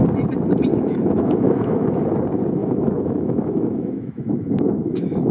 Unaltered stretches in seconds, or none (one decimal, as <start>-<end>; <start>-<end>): 0.0-0.7; 2.0-2.6